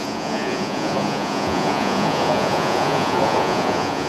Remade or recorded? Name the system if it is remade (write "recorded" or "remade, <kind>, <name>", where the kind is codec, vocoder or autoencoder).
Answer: remade, vocoder, Vocos